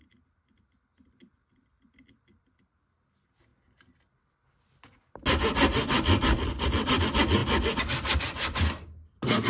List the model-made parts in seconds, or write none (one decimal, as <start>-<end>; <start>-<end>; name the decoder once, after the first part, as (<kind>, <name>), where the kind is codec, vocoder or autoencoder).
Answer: none